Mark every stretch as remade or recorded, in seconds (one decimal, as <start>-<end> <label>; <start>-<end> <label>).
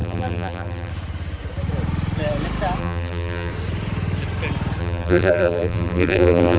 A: 0.0-0.9 remade; 0.9-2.8 recorded; 2.8-3.5 remade; 3.5-4.8 recorded; 4.8-6.6 remade